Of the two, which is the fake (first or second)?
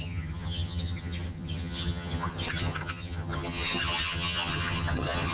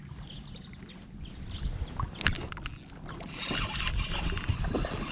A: first